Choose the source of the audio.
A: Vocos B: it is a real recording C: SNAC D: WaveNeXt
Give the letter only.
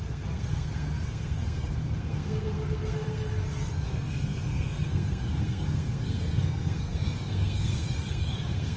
C